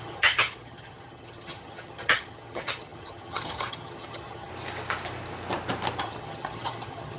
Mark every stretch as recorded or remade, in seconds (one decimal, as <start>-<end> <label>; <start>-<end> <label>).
0.0-4.5 remade; 4.5-6.0 recorded; 6.0-7.2 remade